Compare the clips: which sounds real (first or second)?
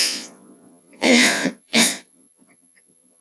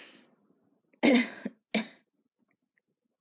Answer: second